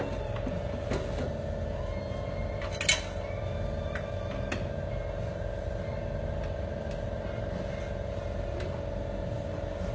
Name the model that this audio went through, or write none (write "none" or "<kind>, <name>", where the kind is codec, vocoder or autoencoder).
none